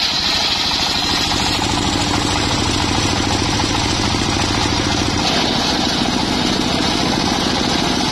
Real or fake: real